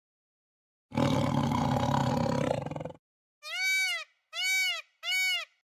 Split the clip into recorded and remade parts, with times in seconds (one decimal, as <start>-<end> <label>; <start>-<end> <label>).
0.0-5.8 recorded